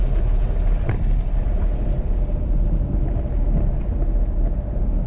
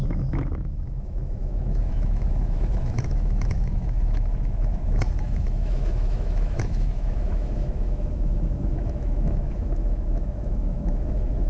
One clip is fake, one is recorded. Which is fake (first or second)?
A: second